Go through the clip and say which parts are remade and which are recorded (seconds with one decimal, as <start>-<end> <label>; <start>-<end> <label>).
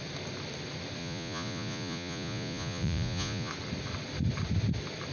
0.0-1.0 recorded; 1.0-3.5 remade; 3.5-5.1 recorded